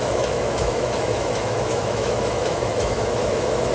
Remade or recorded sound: remade